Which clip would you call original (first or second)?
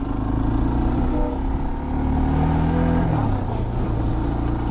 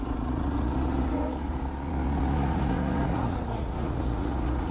first